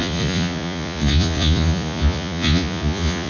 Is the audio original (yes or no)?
no